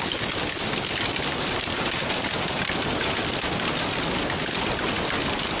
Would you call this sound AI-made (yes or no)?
no